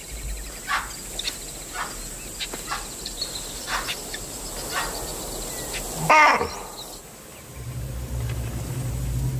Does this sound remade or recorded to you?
recorded